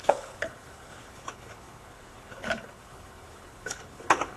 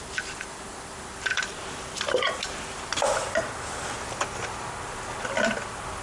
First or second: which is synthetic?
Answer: first